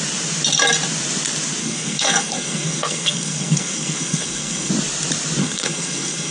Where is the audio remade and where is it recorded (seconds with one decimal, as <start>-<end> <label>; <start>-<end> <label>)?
0.0-1.6 recorded; 1.6-4.7 remade; 4.7-5.4 recorded; 5.4-6.3 remade